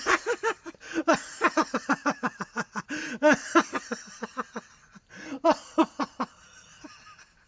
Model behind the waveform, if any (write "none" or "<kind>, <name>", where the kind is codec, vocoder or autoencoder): none